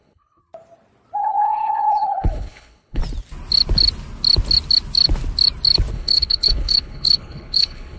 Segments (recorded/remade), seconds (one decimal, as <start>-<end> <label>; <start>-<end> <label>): 0.0-0.4 remade; 0.4-1.2 recorded; 1.2-3.0 remade; 3.0-5.9 recorded; 5.9-8.0 remade